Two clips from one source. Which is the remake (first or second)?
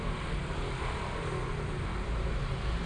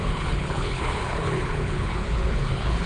second